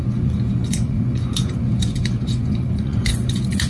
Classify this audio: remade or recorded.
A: remade